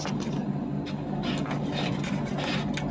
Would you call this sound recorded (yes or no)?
yes